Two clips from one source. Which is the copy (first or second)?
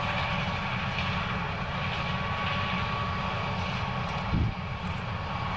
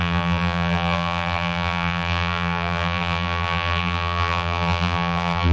second